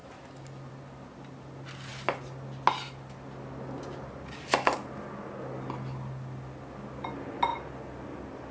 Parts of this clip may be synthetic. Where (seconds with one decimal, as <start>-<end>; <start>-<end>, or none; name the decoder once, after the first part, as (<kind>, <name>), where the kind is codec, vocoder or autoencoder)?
none